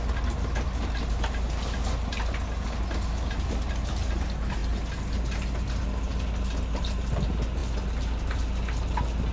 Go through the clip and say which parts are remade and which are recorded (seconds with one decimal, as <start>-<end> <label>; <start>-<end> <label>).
0.0-9.3 recorded